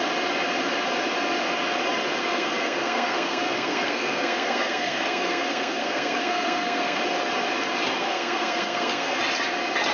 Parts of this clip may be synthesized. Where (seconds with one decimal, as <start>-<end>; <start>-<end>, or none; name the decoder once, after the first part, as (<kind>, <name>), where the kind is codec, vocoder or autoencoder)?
2.2-7.0 (codec, SNAC); 8.0-9.2